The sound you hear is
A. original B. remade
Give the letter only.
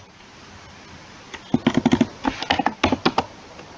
A